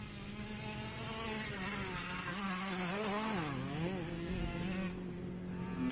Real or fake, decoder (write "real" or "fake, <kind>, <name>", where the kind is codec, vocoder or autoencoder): real